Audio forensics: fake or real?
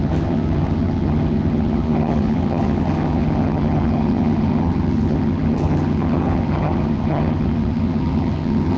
fake